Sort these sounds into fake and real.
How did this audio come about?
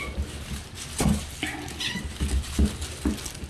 real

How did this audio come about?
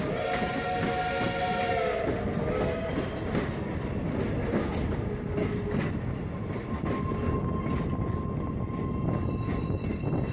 real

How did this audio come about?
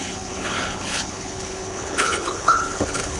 fake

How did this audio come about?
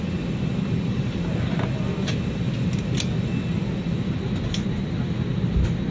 real